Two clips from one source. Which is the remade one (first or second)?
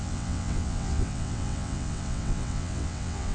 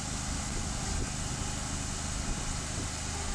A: first